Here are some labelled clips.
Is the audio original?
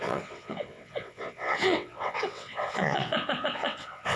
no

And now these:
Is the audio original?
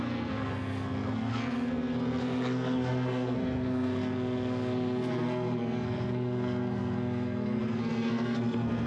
no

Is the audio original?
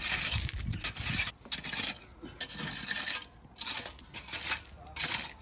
yes